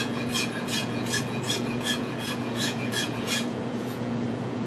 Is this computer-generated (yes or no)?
yes